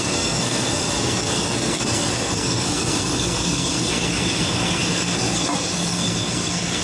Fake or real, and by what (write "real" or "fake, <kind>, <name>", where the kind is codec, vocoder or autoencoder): fake, codec, SNAC